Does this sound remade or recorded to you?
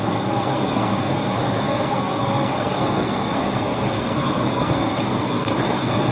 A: remade